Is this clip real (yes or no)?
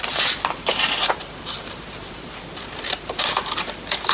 no